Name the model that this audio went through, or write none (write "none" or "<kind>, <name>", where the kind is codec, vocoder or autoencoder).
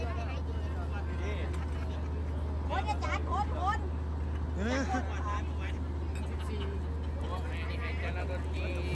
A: none